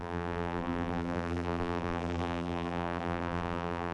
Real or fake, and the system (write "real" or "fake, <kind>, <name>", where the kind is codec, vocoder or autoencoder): fake, vocoder, BigVGAN v2